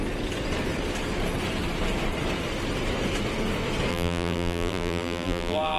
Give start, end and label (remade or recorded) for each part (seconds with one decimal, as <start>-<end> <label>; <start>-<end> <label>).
0.0-3.9 recorded; 3.9-5.8 remade